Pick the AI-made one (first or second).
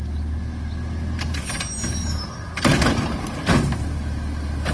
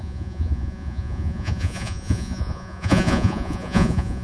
second